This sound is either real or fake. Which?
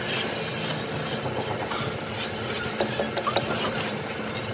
real